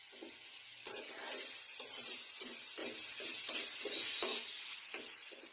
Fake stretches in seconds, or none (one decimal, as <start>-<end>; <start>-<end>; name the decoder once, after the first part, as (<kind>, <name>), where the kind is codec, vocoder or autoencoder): 0.0-0.8 (vocoder, Vocos); 2.1-2.8; 3.8-4.3